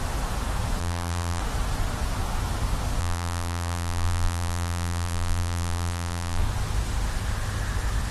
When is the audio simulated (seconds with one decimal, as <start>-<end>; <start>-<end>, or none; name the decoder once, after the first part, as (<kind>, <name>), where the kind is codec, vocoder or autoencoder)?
0.8-1.4 (vocoder, BigVGAN v2); 3.0-6.4